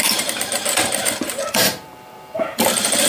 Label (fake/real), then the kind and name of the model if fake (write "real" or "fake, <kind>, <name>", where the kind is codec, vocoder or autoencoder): fake, vocoder, BigVGAN v2